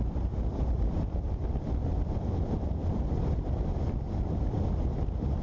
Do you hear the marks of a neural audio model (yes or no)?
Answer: no